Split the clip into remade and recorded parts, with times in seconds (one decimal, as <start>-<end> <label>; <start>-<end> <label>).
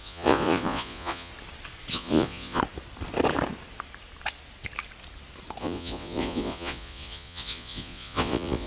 0.0-1.3 remade; 1.3-1.9 recorded; 1.9-2.6 remade; 2.6-5.6 recorded; 5.6-8.7 remade